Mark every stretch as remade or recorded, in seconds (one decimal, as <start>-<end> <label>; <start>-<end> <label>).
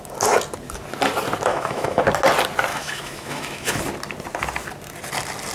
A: 0.0-1.5 recorded; 1.5-2.0 remade; 2.0-2.7 recorded; 2.7-3.8 remade; 3.8-5.5 recorded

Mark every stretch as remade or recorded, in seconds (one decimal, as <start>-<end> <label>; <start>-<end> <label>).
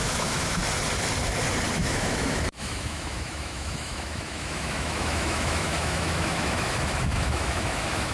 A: 0.0-0.6 remade; 0.6-1.7 recorded; 1.7-8.1 remade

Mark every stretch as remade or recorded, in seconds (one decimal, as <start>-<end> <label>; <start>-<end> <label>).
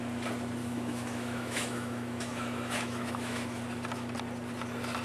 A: 0.0-0.6 recorded; 0.6-3.6 remade; 3.6-5.0 recorded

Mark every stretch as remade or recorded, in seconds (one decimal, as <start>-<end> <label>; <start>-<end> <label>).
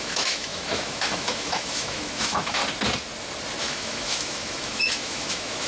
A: 0.0-2.6 remade; 2.6-3.6 recorded; 3.6-5.7 remade